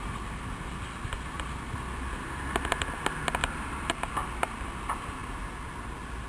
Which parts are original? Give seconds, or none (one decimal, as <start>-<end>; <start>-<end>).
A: 0.0-3.4; 4.1-6.3